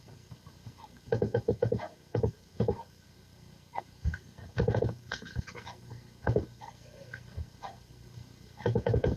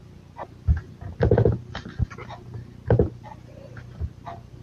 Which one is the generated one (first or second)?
first